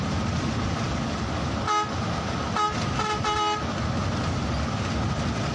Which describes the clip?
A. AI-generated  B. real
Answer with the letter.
B